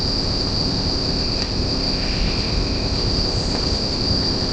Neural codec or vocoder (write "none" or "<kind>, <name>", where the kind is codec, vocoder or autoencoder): codec, ZipCodec